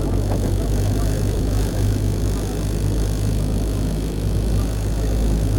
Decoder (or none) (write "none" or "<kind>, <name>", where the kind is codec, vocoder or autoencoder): autoencoder, DAC-VAE